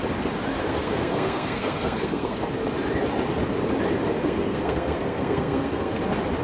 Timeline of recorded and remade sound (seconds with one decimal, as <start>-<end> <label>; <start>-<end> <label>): 0.0-0.6 recorded; 0.6-2.4 remade; 2.4-4.2 recorded; 4.2-6.0 remade; 6.0-6.4 recorded